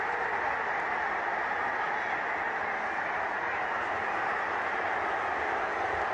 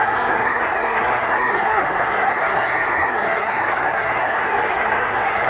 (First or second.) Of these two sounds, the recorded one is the first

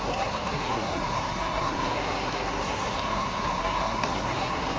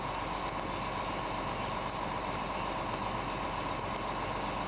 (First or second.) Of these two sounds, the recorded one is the second